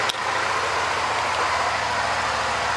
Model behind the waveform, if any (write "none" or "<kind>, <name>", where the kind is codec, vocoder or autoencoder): none